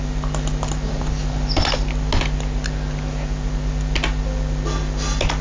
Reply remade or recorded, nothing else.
recorded